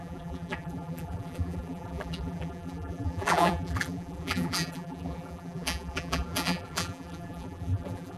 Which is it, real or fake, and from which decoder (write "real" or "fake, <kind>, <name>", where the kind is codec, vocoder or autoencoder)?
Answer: fake, vocoder, BigVGAN v2